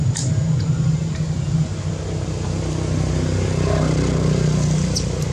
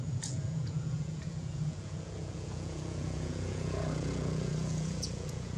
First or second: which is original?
first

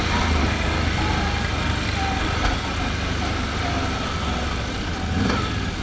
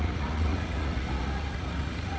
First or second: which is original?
first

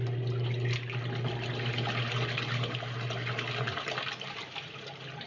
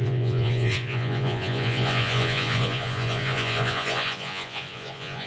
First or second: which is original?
first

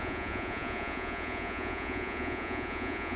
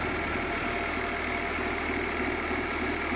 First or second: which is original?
second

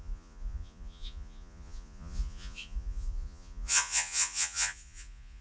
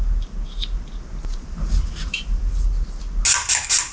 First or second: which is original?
second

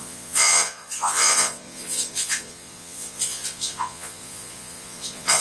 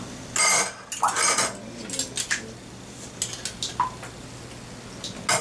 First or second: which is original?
second